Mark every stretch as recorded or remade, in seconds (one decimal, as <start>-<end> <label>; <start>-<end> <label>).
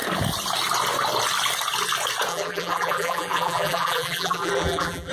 0.0-2.3 recorded; 2.3-5.1 remade